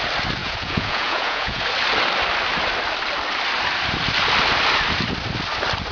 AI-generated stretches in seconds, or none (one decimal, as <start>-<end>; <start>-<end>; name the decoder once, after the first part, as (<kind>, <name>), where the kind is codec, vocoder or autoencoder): 0.4-1.6 (vocoder, Vocos)